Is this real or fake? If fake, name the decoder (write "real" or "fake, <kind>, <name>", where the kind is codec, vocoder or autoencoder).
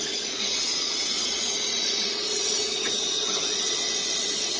fake, vocoder, Vocos